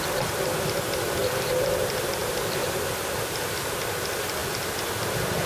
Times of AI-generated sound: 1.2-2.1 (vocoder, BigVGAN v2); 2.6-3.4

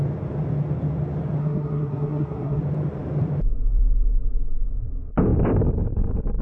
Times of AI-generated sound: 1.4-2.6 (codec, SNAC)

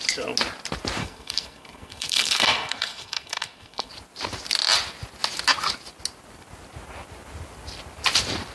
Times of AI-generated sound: 1.0-3.9 (codec, SNAC)